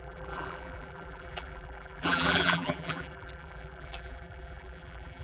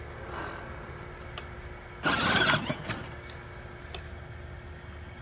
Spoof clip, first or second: first